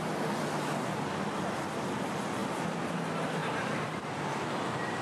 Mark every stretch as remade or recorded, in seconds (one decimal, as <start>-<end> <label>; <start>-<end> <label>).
0.0-5.0 recorded